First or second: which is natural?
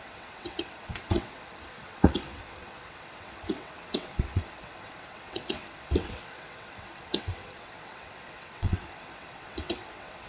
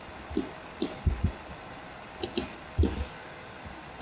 second